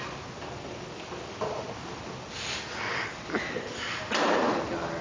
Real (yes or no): yes